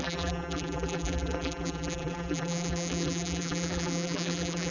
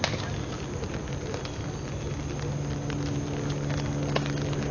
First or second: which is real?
second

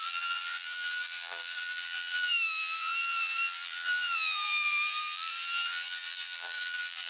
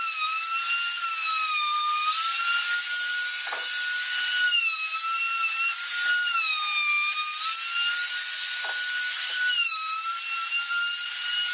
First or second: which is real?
second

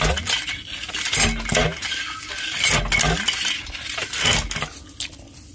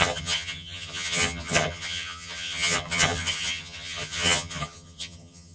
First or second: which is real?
first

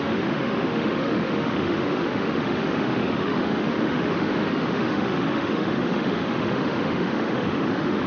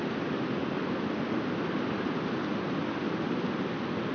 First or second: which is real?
second